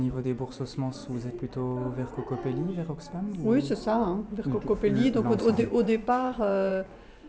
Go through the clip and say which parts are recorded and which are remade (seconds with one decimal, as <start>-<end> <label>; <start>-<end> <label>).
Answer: 0.0-1.0 remade; 1.0-5.4 recorded; 5.4-6.7 remade; 6.7-7.3 recorded